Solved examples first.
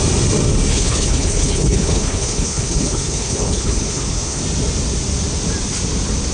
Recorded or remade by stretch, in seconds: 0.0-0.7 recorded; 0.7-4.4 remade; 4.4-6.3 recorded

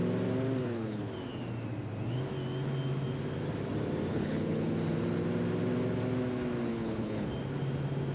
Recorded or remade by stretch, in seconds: 0.0-0.6 recorded; 0.6-1.1 remade; 1.1-4.1 recorded; 4.1-4.7 remade; 4.7-6.7 recorded; 6.7-7.3 remade; 7.3-8.1 recorded

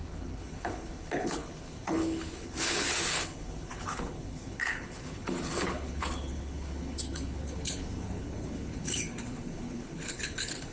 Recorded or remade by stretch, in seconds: 0.0-10.7 remade

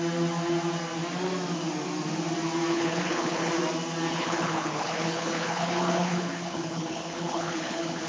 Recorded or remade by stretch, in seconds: 0.0-2.7 recorded; 2.7-3.5 remade; 3.5-4.1 recorded; 4.1-8.1 remade